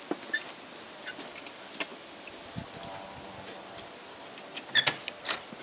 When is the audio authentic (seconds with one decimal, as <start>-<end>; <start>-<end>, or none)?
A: 0.0-5.6